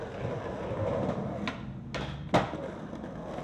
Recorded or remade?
recorded